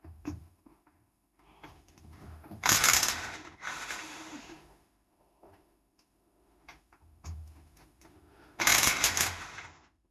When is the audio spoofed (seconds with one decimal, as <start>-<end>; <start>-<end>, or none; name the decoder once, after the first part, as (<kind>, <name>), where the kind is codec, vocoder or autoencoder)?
0.0-10.1 (autoencoder, DAC-VAE)

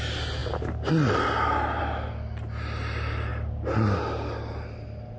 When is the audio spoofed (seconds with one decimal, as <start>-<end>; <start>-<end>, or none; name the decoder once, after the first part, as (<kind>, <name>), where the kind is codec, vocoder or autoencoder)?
none

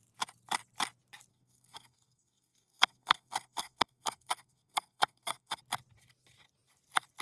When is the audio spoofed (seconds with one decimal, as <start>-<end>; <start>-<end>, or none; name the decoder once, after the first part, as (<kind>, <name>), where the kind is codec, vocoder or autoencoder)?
1.3-5.6 (codec, SNAC)

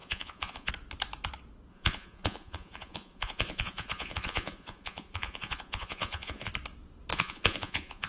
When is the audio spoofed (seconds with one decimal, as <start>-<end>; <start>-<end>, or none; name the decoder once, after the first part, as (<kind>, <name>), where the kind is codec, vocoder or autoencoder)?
0.0-0.7 (vocoder, Vocos); 1.7-6.5; 7.1-8.1

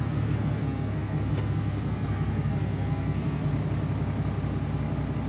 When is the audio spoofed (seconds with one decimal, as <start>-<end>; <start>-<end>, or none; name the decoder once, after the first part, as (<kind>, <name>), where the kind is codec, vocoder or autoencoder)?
0.0-3.5 (codec, SNAC)

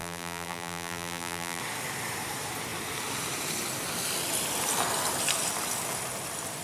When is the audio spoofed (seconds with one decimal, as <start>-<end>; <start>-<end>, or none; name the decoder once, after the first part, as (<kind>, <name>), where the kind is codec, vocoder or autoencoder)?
0.0-1.6 (vocoder, BigVGAN v2)

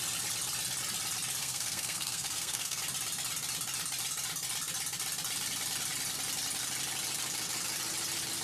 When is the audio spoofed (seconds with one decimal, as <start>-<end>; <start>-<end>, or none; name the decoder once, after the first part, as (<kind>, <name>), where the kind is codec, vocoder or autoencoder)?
1.4-2.8 (codec, SNAC)

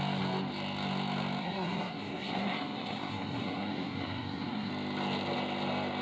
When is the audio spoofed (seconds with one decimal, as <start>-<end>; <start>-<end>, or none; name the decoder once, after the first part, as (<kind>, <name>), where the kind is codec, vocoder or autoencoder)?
1.4-4.7 (codec, SNAC)